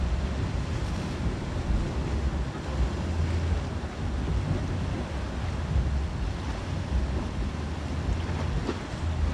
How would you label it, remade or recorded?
recorded